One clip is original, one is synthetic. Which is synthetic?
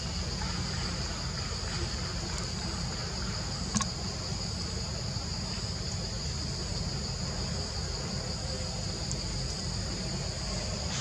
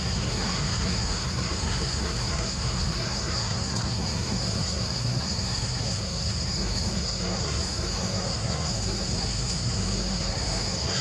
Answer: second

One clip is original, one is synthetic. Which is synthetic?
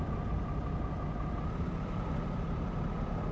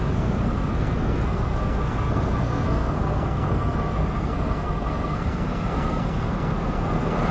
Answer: second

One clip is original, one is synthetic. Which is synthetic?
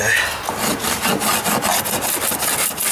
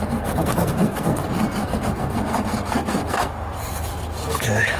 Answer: second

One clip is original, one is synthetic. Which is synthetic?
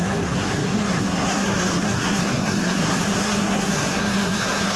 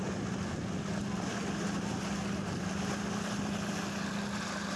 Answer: first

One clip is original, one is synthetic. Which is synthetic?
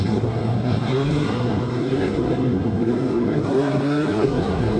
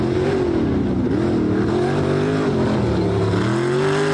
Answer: first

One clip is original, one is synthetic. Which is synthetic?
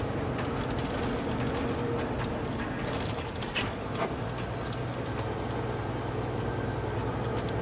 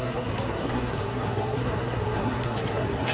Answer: second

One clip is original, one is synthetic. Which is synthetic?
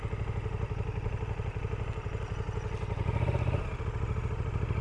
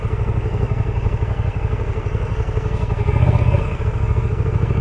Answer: second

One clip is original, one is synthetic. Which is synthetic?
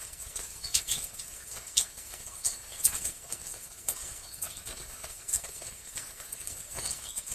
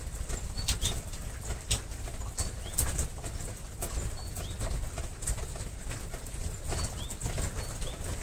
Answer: first